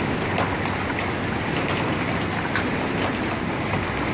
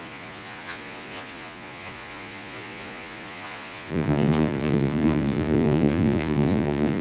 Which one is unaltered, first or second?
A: first